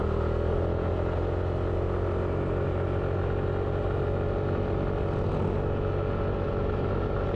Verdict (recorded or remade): recorded